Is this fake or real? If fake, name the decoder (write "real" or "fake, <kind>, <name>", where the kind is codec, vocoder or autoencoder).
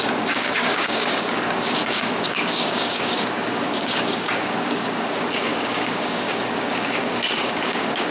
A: fake, codec, DAC